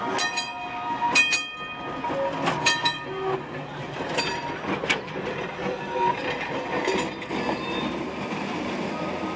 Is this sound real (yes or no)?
yes